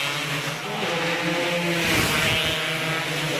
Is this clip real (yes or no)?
yes